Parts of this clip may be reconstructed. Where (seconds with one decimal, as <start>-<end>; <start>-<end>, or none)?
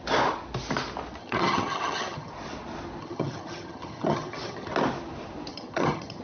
1.2-2.3; 3.0-4.7; 5.5-6.2